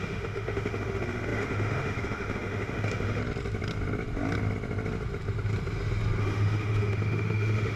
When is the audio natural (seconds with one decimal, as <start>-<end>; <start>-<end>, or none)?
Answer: 3.2-6.2